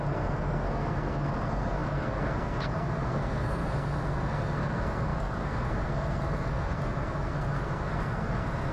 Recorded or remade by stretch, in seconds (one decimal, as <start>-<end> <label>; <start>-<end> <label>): 0.0-8.7 remade

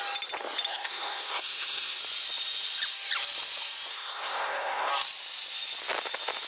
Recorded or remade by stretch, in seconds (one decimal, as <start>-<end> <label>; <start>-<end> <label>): 0.0-0.7 recorded; 0.7-2.0 remade; 2.0-3.9 recorded; 3.9-4.9 remade; 4.9-6.5 recorded

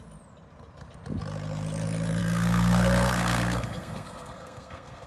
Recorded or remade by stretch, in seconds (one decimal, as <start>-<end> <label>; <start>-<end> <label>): 0.0-2.2 recorded; 2.2-5.1 remade

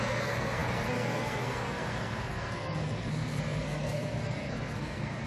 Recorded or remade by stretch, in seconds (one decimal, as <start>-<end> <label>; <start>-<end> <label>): 0.0-5.3 remade

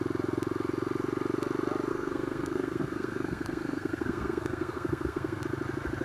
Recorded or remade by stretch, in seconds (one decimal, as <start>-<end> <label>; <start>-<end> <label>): 0.0-1.9 recorded; 1.9-5.4 remade; 5.4-6.0 recorded

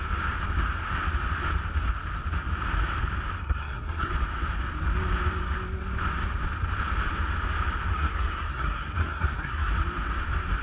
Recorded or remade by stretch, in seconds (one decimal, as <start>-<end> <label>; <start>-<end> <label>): 0.0-3.4 recorded; 3.4-4.1 remade; 4.1-7.9 recorded; 7.9-9.7 remade; 9.7-10.6 recorded

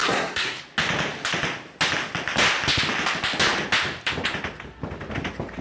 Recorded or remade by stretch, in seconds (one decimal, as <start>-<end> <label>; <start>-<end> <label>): 0.0-0.6 remade; 0.6-5.6 recorded

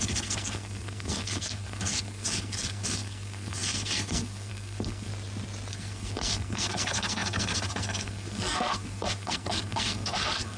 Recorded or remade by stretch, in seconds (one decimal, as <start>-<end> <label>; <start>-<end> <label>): 0.0-5.1 remade; 5.1-5.7 recorded; 5.7-10.6 remade